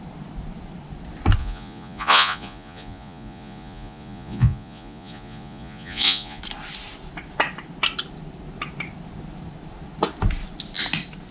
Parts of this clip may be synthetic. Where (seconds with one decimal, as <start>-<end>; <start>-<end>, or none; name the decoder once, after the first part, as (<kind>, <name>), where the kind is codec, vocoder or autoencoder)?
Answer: 1.4-6.4 (vocoder, Vocos)